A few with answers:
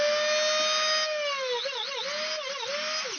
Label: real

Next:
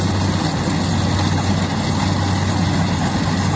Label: real